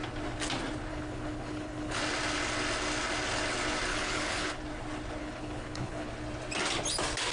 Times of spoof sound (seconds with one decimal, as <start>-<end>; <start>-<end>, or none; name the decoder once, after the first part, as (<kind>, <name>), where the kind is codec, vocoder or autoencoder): 0.9-2.0 (codec, HILCodec); 3.9-4.6; 5.2-6.1